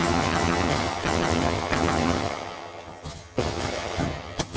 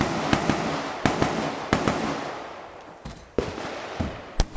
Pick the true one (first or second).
second